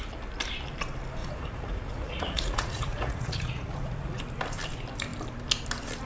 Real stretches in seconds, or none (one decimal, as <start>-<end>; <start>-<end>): 0.0-1.2; 4.2-6.1